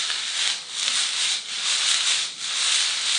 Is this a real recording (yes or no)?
yes